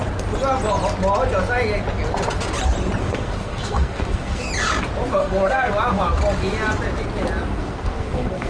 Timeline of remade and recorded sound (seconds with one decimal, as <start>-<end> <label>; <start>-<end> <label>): 0.0-3.0 recorded; 3.0-4.5 remade; 4.5-5.2 recorded; 5.2-5.7 remade; 5.7-7.4 recorded; 7.4-8.5 remade